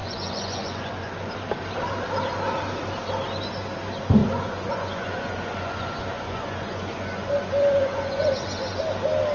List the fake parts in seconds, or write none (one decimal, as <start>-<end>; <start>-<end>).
0.0-1.1; 4.2-8.8